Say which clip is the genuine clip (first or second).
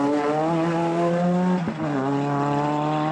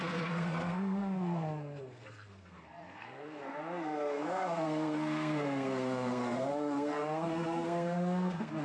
first